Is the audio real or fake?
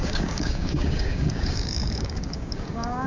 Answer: fake